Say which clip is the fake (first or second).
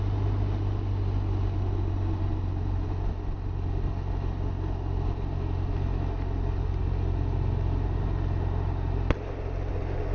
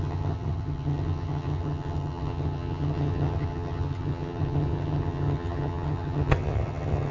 second